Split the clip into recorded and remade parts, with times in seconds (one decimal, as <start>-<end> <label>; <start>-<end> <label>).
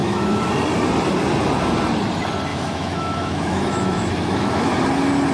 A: 0.0-0.5 remade; 0.5-2.5 recorded; 2.5-4.7 remade; 4.7-5.3 recorded